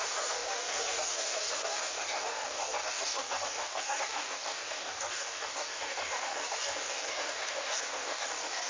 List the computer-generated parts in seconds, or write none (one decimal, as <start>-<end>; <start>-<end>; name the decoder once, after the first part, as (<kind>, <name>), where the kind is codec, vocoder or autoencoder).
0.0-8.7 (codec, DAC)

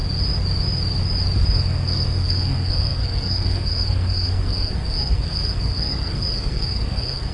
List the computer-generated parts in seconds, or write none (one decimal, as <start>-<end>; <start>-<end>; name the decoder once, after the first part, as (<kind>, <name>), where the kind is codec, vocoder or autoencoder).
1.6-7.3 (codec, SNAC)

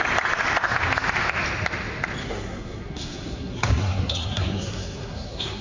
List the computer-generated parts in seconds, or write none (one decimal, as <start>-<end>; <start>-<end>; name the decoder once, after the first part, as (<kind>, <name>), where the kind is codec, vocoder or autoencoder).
2.2-5.6 (codec, SNAC)